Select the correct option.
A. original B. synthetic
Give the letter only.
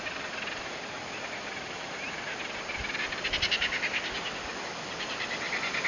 A